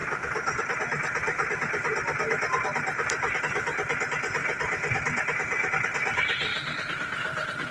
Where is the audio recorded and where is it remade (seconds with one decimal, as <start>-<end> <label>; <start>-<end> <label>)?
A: 0.0-7.7 recorded